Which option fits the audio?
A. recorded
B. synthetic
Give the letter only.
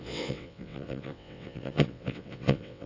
B